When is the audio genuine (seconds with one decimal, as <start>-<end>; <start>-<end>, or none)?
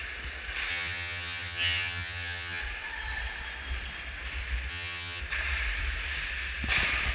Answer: 0.0-0.7; 2.6-4.7; 5.2-7.1